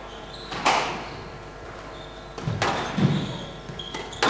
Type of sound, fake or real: real